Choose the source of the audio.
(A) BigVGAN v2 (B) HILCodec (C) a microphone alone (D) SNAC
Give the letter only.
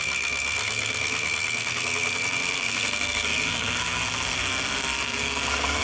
D